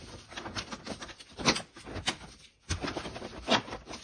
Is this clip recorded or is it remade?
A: recorded